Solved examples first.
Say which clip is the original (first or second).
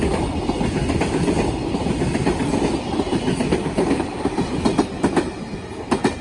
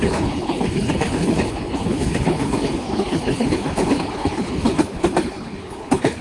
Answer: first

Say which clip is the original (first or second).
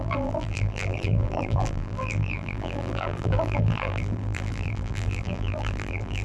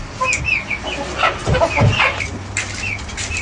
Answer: second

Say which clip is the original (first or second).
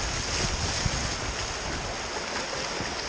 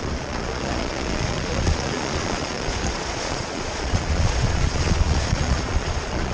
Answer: first